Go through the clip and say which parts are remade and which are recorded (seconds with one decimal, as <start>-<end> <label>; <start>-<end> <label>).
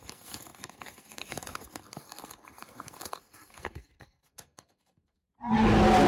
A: 0.0-5.2 remade; 5.2-6.1 recorded